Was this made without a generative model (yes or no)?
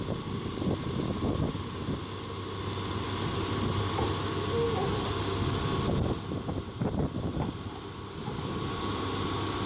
yes